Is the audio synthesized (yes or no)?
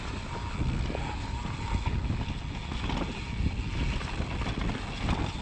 no